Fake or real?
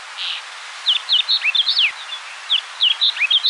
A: real